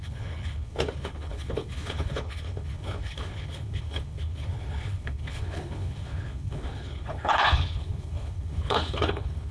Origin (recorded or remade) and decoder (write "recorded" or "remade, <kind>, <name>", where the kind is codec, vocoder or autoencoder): remade, codec, HILCodec